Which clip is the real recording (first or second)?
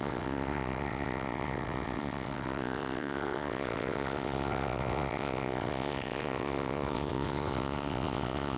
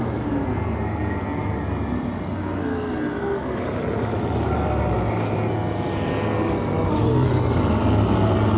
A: second